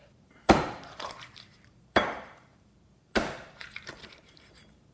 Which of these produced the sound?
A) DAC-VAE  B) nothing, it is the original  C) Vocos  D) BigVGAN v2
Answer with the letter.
D